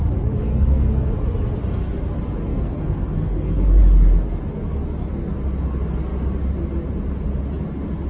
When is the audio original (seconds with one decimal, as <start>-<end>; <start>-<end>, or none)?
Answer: 0.0-0.5; 1.1-2.5; 3.8-8.1